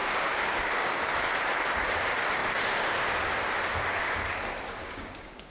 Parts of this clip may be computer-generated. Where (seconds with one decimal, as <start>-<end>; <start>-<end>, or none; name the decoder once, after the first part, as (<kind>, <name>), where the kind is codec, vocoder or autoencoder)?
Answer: 0.0-1.0 (codec, DAC); 4.8-5.5